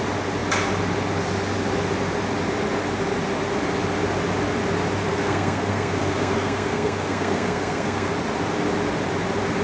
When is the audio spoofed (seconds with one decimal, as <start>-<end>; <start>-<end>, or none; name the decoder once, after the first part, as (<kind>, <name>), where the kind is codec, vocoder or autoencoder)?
5.1-8.1 (codec, SNAC)